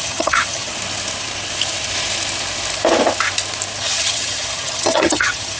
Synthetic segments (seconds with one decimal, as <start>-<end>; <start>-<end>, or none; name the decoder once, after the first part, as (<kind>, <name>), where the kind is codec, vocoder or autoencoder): 0.0-0.7 (vocoder, HiFi-GAN); 3.8-5.6